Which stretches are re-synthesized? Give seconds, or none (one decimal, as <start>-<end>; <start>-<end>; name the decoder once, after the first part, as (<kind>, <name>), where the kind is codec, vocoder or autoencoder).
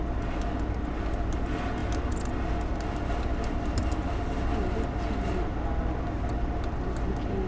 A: none